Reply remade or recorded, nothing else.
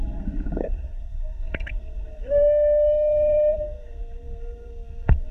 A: remade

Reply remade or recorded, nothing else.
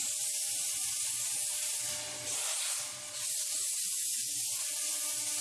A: recorded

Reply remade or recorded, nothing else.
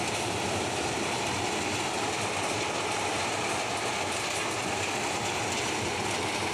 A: recorded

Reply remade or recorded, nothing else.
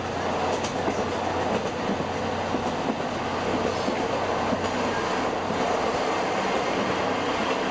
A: recorded